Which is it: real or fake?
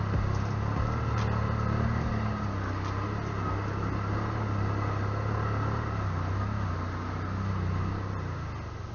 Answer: real